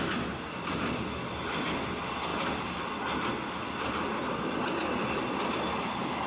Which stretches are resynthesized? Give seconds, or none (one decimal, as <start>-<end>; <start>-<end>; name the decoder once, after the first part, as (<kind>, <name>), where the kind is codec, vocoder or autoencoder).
none